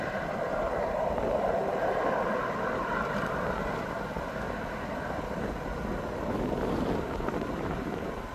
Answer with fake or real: real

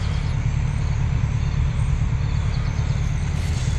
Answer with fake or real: fake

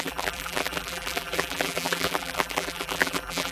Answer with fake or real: fake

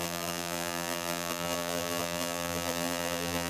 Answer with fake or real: fake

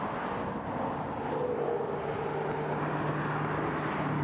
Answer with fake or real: real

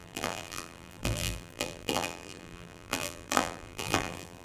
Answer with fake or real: fake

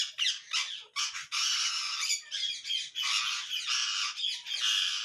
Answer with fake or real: real